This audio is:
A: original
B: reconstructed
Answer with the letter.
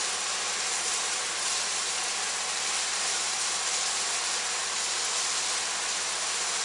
A